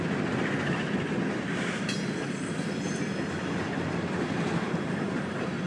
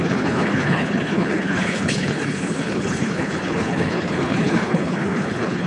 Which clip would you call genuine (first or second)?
first